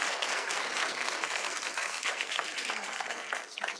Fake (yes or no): yes